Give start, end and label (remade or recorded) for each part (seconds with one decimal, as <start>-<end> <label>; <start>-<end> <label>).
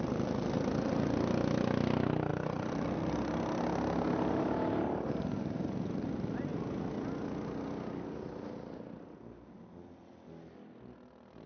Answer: 0.0-11.5 recorded